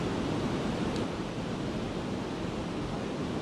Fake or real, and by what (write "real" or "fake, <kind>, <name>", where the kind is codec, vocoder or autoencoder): real